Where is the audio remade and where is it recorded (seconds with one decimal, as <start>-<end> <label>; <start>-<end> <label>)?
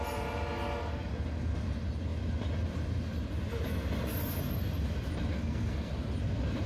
0.0-5.3 recorded; 5.3-5.9 remade; 5.9-6.7 recorded